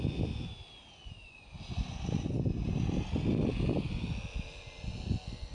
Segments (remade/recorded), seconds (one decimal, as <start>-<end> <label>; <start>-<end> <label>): 0.0-1.0 recorded; 1.0-2.0 remade; 2.0-5.5 recorded